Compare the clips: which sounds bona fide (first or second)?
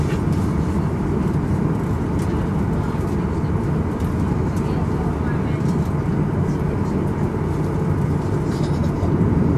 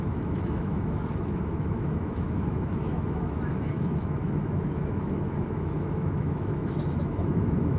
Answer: first